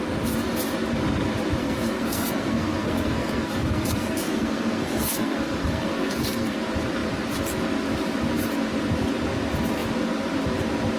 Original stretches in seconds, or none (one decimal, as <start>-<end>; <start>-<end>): 0.0-1.6; 6.6-11.0